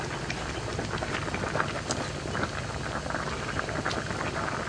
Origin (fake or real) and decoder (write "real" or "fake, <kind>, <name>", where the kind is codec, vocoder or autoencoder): real